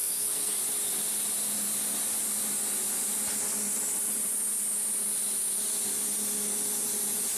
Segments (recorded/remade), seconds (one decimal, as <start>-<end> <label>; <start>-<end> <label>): 0.0-0.6 remade; 0.6-7.4 recorded